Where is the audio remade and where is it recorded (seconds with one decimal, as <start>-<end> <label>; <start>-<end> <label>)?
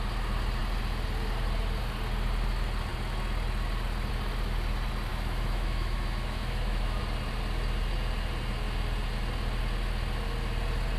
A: 0.0-5.1 recorded; 5.1-7.0 remade; 7.0-11.0 recorded